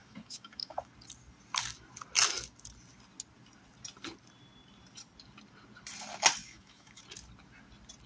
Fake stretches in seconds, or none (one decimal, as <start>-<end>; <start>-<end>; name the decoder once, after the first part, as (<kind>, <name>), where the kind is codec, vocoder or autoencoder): 0.0-0.9 (autoencoder, DAC-VAE); 6.4-7.0